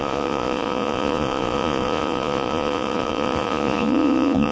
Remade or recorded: remade